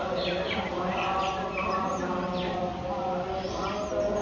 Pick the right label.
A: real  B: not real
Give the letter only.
A